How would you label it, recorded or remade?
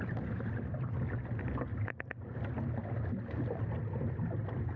recorded